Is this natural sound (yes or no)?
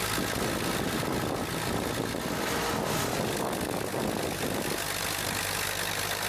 yes